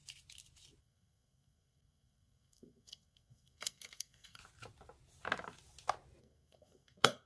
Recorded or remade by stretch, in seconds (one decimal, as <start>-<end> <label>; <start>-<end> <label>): 0.0-0.8 recorded; 0.8-4.4 remade; 4.4-6.2 recorded; 6.2-7.3 remade